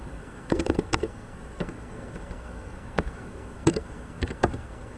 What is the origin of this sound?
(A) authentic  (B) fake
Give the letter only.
B